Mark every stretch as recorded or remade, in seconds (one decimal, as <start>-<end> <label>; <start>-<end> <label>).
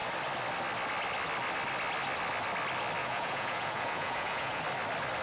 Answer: 0.0-3.0 recorded; 3.0-4.6 remade; 4.6-5.2 recorded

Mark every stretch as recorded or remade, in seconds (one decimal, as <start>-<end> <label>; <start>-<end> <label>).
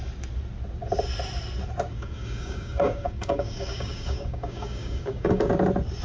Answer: 0.0-1.9 recorded; 1.9-5.5 remade; 5.5-6.0 recorded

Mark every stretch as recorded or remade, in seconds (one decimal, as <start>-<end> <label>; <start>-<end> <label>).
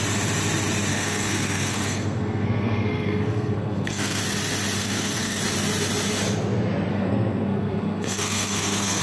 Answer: 0.0-0.9 recorded; 0.9-4.2 remade; 4.2-4.8 recorded; 4.8-5.4 remade; 5.4-6.9 recorded; 6.9-9.0 remade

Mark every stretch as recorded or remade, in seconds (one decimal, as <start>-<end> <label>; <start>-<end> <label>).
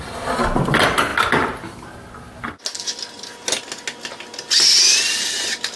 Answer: 0.0-5.8 recorded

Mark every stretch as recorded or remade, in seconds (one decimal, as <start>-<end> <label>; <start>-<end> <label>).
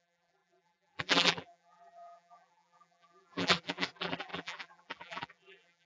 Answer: 0.0-5.9 remade